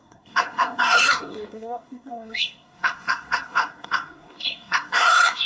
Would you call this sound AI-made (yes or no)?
yes